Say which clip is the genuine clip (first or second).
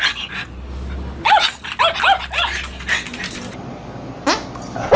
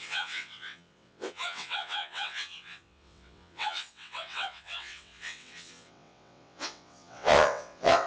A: first